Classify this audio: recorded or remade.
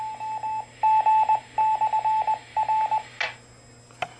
recorded